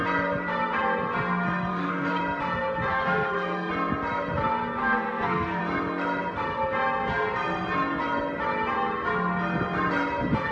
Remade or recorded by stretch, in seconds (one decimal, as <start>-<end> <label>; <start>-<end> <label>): 0.0-1.7 recorded; 1.7-2.2 remade; 2.2-2.9 recorded; 2.9-3.7 remade; 3.7-4.8 recorded; 4.8-5.6 remade; 5.6-10.5 recorded